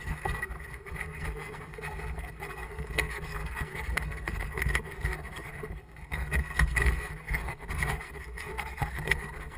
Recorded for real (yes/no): no